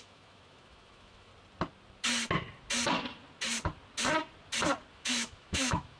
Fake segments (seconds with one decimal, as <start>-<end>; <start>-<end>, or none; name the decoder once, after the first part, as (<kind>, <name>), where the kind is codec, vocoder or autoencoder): 0.0-1.3 (autoencoder, DAC-VAE); 4.9-6.0